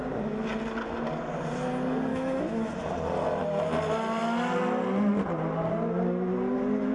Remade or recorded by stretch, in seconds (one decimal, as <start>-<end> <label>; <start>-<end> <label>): 0.0-2.1 recorded; 2.1-2.7 remade; 2.7-6.9 recorded